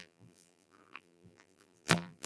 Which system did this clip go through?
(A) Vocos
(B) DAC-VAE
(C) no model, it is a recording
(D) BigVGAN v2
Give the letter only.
D